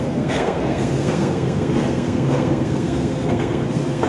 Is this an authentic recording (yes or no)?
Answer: no